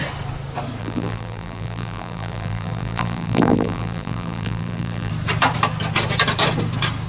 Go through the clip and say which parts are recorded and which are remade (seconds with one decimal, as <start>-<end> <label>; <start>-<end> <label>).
0.0-0.8 recorded; 0.8-5.1 remade; 5.1-7.1 recorded